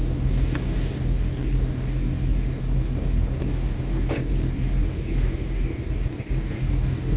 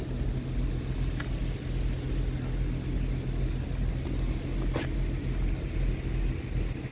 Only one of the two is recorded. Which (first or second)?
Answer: second